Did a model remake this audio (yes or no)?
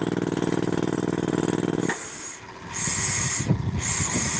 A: no